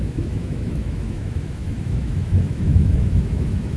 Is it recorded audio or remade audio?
remade